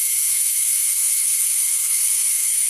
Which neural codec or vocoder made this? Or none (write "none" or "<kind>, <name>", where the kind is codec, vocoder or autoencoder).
autoencoder, DAC-VAE